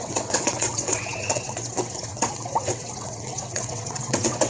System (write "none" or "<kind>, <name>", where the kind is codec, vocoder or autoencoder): vocoder, WaveNeXt